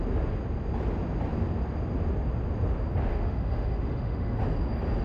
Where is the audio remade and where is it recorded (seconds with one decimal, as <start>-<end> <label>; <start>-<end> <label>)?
0.0-3.1 recorded; 3.1-4.4 remade; 4.4-5.0 recorded